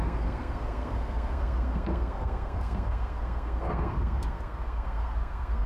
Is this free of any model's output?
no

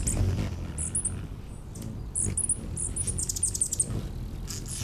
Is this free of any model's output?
yes